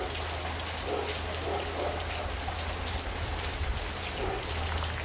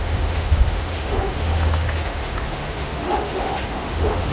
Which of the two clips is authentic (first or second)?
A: first